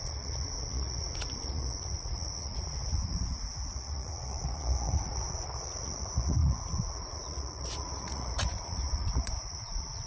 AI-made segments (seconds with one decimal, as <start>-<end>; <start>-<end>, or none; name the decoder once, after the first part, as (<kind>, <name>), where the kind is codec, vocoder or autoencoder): 0.0-10.1 (vocoder, Vocos)